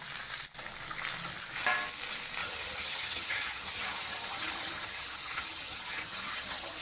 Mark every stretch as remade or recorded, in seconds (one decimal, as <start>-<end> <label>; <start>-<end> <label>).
0.0-2.4 recorded; 2.4-6.8 remade